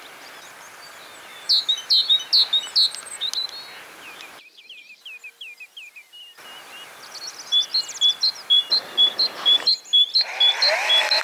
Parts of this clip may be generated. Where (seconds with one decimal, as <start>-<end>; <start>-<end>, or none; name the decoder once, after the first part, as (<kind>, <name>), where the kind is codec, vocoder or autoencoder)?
none